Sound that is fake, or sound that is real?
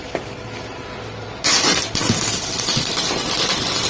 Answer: real